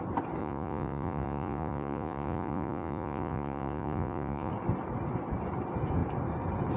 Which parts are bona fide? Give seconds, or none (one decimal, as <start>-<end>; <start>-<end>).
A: 0.0-0.4; 4.5-6.8